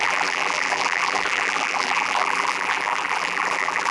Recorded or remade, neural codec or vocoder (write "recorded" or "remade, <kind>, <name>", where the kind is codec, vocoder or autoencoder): remade, vocoder, BigVGAN v2